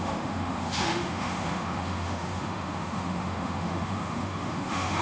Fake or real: fake